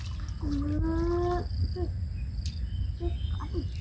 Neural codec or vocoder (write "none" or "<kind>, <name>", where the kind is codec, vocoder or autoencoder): none